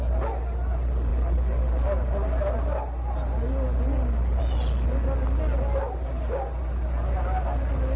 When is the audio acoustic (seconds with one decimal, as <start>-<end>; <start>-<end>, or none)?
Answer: 0.0-8.0